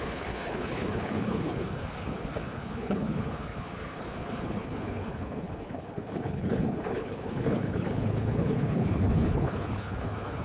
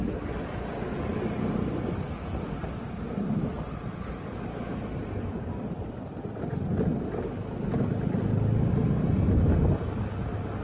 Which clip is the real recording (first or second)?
second